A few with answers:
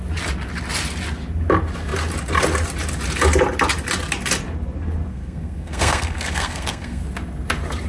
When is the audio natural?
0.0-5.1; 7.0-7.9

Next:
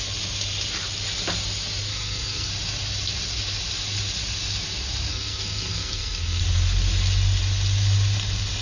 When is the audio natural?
0.0-1.9; 2.5-5.1; 6.4-8.6